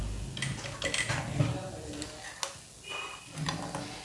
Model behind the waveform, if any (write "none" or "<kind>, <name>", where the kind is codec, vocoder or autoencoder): none